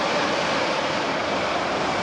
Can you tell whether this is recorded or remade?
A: recorded